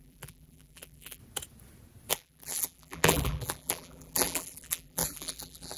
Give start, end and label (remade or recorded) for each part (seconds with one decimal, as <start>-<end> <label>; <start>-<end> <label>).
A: 0.0-1.2 remade; 1.2-2.1 recorded; 2.1-5.8 remade